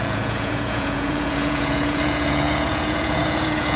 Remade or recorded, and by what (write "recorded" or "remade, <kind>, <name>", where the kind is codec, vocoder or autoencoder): remade, vocoder, Vocos